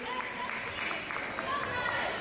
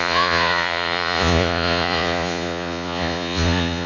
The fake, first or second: second